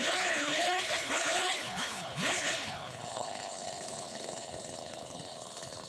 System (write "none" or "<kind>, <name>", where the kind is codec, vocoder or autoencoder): codec, HILCodec